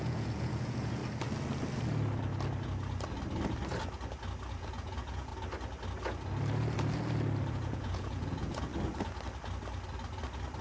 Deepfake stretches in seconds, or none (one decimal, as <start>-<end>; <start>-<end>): 0.0-1.0; 4.6-5.3; 7.5-8.7